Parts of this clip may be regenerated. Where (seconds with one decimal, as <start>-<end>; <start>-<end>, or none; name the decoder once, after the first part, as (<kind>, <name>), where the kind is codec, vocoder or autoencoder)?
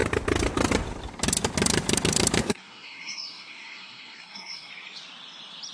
2.4-4.7 (codec, SNAC)